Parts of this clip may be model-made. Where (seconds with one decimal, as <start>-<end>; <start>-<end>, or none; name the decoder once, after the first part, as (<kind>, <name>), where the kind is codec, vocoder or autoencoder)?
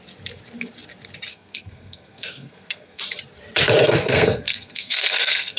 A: 1.3-3.0 (codec, SNAC); 3.8-5.6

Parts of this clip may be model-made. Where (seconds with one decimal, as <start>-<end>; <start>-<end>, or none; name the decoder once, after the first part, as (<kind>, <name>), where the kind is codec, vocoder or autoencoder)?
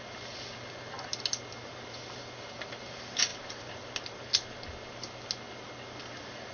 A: none